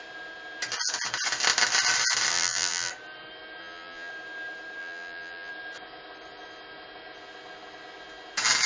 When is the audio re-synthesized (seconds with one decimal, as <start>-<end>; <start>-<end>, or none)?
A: 2.3-2.9; 3.6-4.1; 4.8-5.5